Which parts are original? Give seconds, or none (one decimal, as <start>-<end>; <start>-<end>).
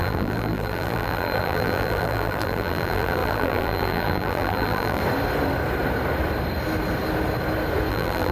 5.0-7.9